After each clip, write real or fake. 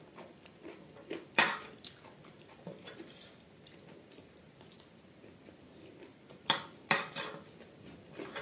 fake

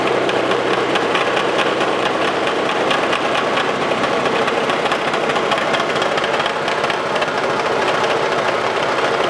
fake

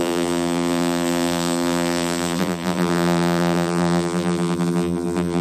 fake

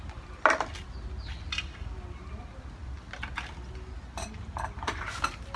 real